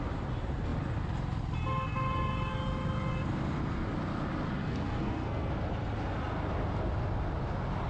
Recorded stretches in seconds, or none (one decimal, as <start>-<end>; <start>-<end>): 0.0-4.6; 5.5-7.9